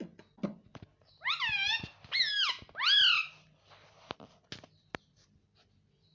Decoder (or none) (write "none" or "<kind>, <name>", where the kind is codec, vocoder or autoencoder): none